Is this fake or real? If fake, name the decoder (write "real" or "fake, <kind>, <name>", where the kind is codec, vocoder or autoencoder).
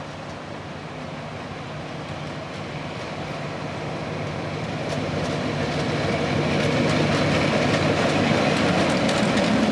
real